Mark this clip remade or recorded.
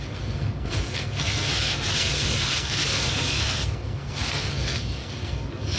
remade